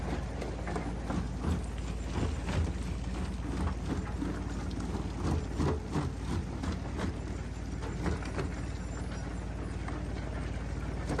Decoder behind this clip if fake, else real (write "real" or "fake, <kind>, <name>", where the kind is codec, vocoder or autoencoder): real